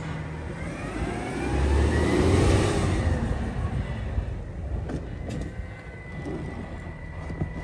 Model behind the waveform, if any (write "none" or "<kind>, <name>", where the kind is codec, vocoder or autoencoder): none